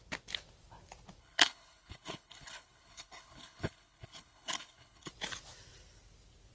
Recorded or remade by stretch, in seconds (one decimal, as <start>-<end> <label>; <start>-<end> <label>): 0.0-1.2 recorded; 1.2-5.1 remade; 5.1-6.5 recorded